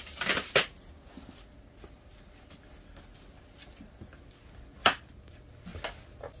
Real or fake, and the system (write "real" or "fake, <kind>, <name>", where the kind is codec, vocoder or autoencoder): real